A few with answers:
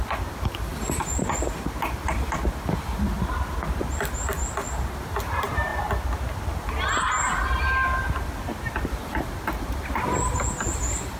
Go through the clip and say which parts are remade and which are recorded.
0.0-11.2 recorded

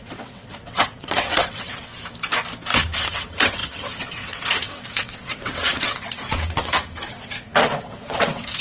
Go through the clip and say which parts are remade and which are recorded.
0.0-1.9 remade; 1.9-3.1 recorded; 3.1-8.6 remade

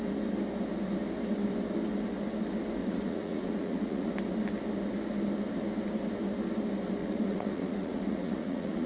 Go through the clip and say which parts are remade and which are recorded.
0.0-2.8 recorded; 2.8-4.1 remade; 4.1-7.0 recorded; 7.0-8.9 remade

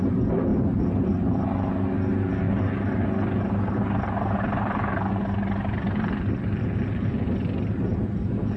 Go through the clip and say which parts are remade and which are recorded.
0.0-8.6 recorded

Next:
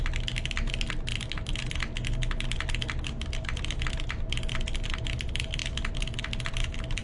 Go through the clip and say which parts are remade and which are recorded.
0.0-7.0 recorded

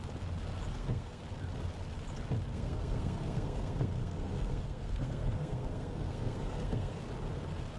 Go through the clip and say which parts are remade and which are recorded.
0.0-0.7 recorded; 0.7-1.2 remade; 1.2-2.5 recorded; 2.5-7.0 remade; 7.0-7.8 recorded

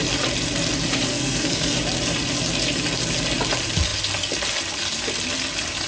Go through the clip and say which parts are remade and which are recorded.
0.0-1.1 recorded; 1.1-1.8 remade; 1.8-5.9 recorded